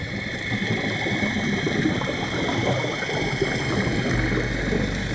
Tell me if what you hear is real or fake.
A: real